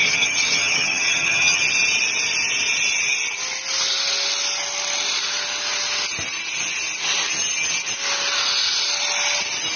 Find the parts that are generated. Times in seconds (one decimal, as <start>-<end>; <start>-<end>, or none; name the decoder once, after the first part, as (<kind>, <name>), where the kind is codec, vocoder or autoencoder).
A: 0.0-1.6 (vocoder, HiFi-GAN)